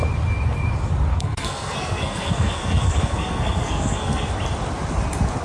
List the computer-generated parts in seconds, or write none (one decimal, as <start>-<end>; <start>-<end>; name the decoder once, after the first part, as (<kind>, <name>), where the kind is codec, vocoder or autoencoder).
1.1-4.3 (codec, SNAC)